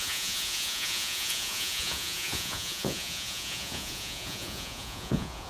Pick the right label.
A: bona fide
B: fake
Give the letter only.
B